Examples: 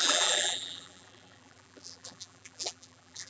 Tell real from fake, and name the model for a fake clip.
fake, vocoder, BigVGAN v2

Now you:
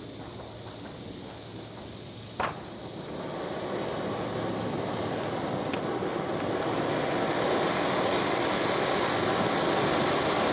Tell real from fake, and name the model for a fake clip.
real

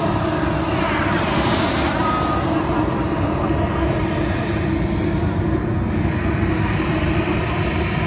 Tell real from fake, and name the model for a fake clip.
real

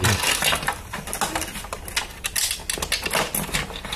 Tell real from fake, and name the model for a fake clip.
real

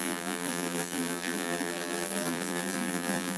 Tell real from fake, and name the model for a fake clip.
fake, vocoder, BigVGAN v2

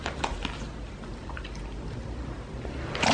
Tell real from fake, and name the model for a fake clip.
real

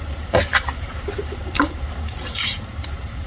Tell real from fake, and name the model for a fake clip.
fake, vocoder, BigVGAN v2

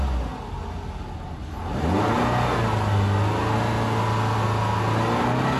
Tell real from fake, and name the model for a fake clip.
real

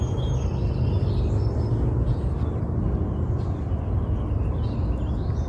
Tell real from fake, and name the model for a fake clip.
real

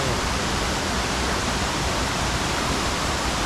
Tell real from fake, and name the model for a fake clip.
real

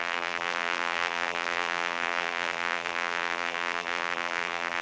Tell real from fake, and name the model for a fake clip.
fake, vocoder, BigVGAN v2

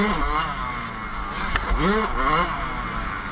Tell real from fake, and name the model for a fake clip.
real